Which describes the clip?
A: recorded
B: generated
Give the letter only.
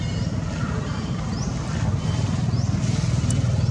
A